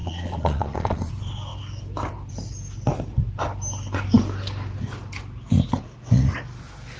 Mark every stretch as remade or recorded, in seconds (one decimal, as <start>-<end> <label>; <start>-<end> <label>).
0.0-1.1 remade; 1.1-7.0 recorded